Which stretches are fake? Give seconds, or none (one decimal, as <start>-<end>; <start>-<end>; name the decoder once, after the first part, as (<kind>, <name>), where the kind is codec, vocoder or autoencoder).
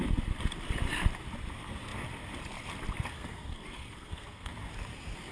3.1-4.5 (codec, SNAC)